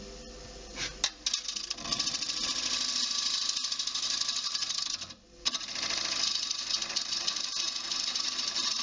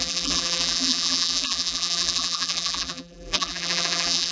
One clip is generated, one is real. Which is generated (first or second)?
second